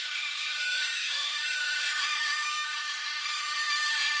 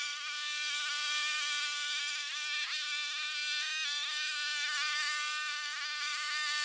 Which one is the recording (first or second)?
second